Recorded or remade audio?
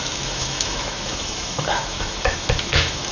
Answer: remade